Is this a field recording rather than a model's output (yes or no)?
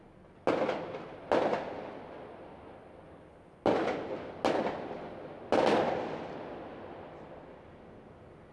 yes